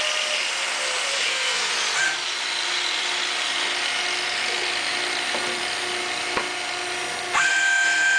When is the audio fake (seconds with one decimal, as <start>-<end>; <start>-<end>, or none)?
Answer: 1.1-1.7